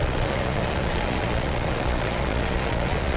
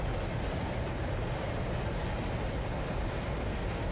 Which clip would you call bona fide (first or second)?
second